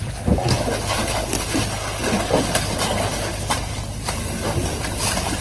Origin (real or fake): real